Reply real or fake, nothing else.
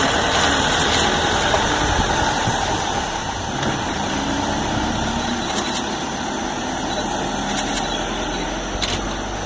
real